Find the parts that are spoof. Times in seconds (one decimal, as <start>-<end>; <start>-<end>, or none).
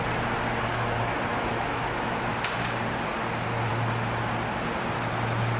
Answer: 1.3-2.3